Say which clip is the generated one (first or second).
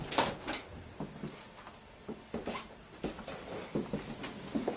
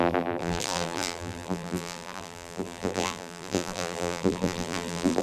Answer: second